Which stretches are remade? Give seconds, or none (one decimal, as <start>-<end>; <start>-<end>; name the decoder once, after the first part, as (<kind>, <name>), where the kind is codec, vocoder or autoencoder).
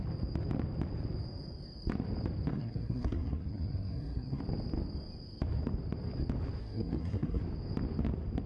2.5-4.4 (codec, SNAC); 6.6-7.4